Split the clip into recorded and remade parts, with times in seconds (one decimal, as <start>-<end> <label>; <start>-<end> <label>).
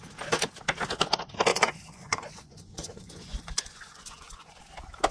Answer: 0.0-1.5 recorded; 1.5-4.6 remade; 4.6-5.1 recorded